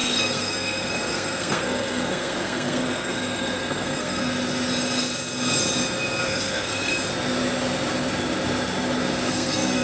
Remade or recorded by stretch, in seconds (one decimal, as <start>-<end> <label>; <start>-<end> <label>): 0.0-4.2 remade; 4.2-6.2 recorded; 6.2-6.9 remade; 6.9-9.3 recorded; 9.3-9.8 remade